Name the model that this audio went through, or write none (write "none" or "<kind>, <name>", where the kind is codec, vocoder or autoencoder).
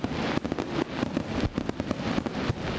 none